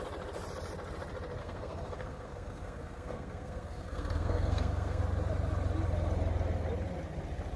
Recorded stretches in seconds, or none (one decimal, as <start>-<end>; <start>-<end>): 0.0-1.4; 5.0-7.6